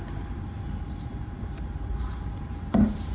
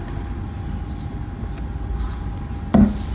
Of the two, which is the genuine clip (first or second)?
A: second